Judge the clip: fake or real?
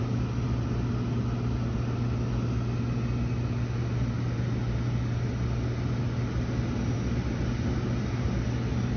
real